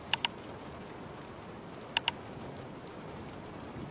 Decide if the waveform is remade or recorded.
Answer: recorded